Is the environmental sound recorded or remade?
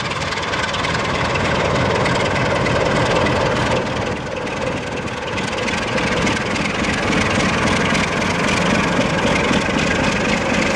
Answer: recorded